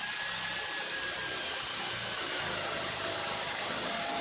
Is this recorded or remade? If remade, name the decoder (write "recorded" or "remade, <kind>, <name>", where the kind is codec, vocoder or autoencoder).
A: remade, vocoder, BigVGAN v2